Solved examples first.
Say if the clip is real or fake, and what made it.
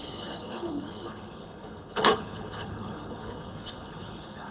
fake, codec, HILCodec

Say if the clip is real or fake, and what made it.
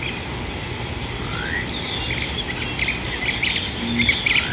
real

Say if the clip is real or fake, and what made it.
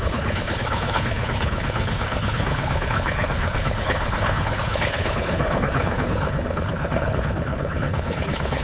fake, codec, HILCodec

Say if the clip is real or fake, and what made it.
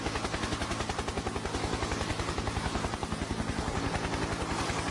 real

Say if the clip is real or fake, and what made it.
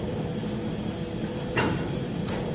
real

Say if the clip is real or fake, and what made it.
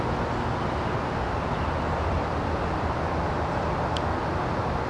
real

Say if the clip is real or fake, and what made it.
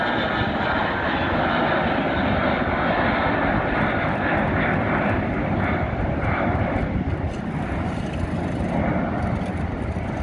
real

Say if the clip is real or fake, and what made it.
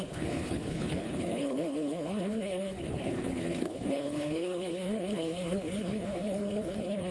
fake, codec, HILCodec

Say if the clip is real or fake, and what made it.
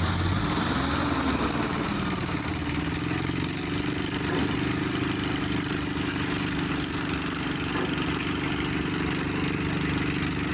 real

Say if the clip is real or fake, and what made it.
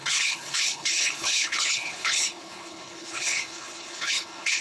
fake, codec, HILCodec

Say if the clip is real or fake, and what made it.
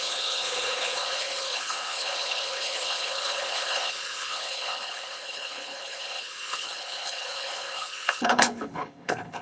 fake, codec, HILCodec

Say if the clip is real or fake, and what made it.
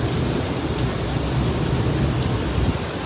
real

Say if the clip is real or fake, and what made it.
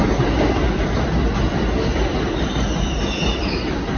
real